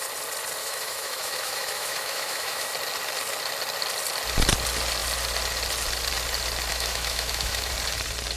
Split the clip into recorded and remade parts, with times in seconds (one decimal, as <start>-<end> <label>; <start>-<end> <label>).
0.0-0.6 recorded; 0.6-2.7 remade; 2.7-6.7 recorded; 6.7-7.7 remade; 7.7-8.4 recorded